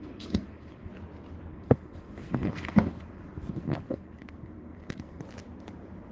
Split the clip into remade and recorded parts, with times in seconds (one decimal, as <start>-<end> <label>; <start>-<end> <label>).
0.0-0.9 remade; 0.9-1.5 recorded; 1.5-5.2 remade; 5.2-6.1 recorded